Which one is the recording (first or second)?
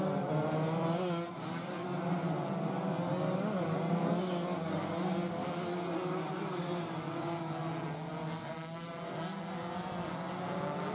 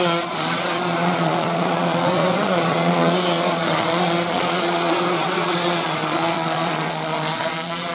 first